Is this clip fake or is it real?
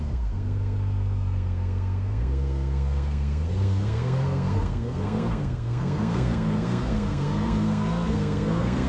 fake